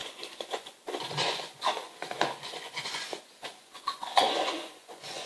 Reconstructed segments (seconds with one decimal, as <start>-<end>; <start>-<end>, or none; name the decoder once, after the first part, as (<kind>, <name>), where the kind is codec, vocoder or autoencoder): 0.0-5.3 (vocoder, Vocos)